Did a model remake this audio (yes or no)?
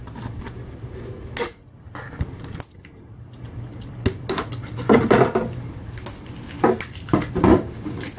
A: no